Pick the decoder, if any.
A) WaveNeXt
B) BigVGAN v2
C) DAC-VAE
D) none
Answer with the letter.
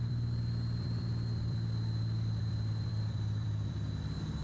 B